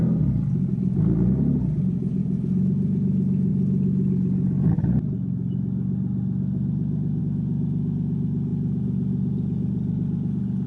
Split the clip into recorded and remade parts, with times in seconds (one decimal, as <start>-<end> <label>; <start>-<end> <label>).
0.0-10.7 recorded